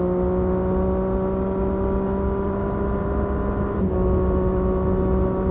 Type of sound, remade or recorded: recorded